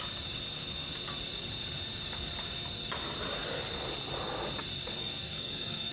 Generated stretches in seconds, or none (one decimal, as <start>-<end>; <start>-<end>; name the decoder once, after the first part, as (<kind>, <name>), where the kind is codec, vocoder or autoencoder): 5.0-5.9 (codec, SNAC)